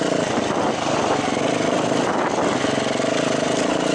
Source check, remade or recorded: recorded